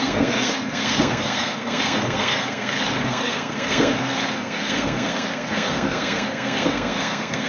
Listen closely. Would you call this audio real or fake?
fake